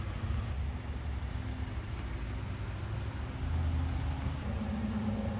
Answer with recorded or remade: recorded